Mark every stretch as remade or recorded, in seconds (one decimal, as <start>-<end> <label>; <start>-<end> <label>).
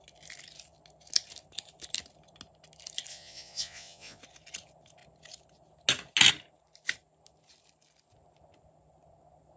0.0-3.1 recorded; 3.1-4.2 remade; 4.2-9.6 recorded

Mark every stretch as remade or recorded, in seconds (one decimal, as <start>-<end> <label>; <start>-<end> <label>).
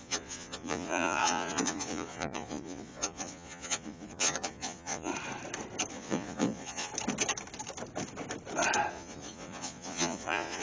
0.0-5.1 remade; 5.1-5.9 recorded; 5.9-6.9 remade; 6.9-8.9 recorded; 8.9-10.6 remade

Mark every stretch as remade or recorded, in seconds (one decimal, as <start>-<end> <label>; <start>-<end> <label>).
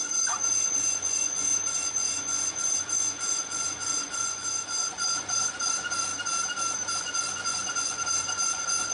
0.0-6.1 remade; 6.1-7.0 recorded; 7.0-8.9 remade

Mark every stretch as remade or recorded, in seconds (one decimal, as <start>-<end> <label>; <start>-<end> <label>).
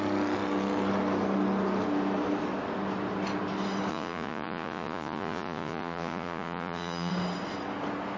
0.0-3.9 recorded; 3.9-7.1 remade; 7.1-8.2 recorded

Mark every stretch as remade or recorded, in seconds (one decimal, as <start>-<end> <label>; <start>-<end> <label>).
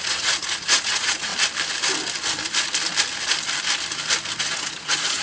0.0-1.3 remade; 1.3-4.4 recorded; 4.4-5.2 remade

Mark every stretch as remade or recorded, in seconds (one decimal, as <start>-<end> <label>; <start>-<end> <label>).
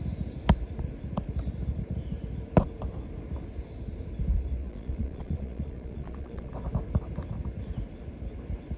0.0-4.6 recorded; 4.6-6.5 remade; 6.5-8.8 recorded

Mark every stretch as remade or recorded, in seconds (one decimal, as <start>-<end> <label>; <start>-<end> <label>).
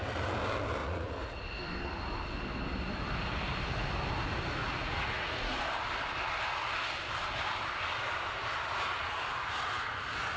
0.0-0.8 recorded; 0.8-1.6 remade; 1.6-4.6 recorded; 4.6-5.6 remade; 5.6-10.4 recorded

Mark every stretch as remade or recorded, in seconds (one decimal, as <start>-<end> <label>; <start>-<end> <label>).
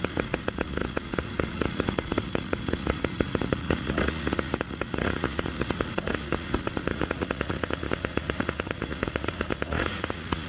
0.0-10.5 remade